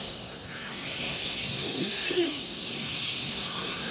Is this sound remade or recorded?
remade